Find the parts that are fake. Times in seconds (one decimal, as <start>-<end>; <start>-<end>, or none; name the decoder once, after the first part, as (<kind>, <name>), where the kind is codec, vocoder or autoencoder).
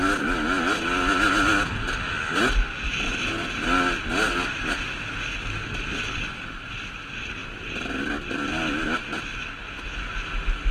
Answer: none